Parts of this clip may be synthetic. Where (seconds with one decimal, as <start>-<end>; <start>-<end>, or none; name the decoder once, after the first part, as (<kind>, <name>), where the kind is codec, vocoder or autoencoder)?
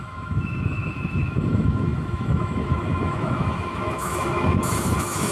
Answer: 0.0-5.3 (autoencoder, DAC-VAE)